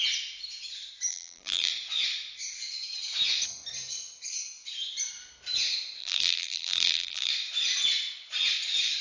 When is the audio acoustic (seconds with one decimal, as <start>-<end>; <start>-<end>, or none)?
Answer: 0.0-1.1; 1.7-6.0; 7.3-9.0